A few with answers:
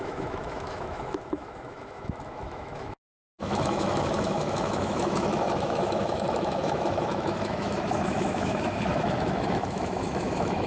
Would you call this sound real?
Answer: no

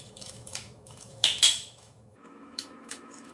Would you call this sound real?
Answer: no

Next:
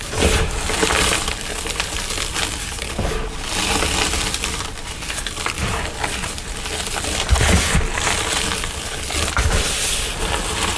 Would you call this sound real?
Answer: yes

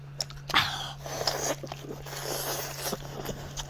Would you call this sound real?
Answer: yes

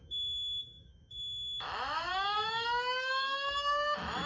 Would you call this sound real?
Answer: no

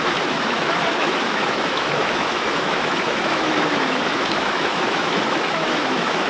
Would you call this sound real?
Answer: no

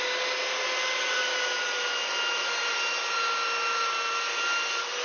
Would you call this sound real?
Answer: yes